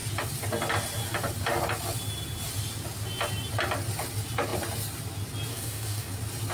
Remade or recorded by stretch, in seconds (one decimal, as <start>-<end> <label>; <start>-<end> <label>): 0.0-5.5 recorded; 5.5-6.1 remade; 6.1-6.5 recorded

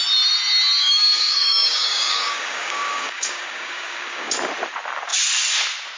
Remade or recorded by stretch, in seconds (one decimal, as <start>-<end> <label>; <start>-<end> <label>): 0.0-0.8 recorded; 0.8-4.3 remade; 4.3-6.0 recorded

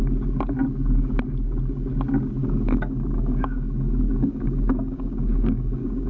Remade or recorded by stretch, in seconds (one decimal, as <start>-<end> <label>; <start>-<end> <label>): 0.0-2.4 recorded; 2.4-6.1 remade

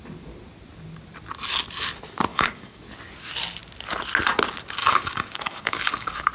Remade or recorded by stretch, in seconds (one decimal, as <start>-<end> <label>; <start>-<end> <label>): 0.0-2.3 recorded; 2.3-2.8 remade; 2.8-4.8 recorded; 4.8-6.3 remade

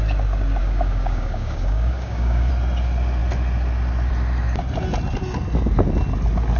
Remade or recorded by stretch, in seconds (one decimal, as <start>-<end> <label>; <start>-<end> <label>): 0.0-0.6 recorded; 0.6-2.5 remade; 2.5-6.6 recorded